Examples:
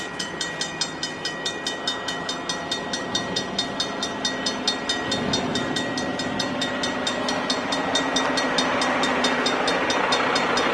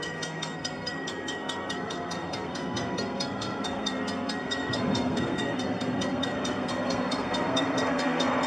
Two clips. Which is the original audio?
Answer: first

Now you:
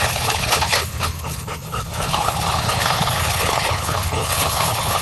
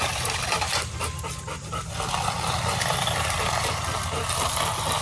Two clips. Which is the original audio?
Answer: second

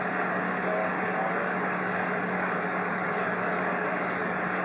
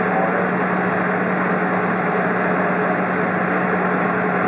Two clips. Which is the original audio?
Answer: second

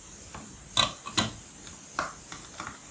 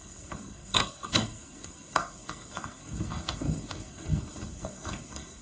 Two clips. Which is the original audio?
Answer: first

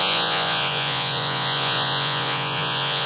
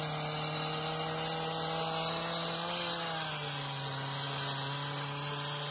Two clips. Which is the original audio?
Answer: second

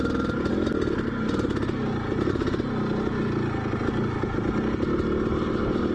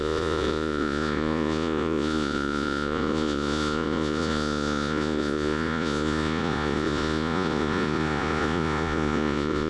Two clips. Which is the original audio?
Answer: first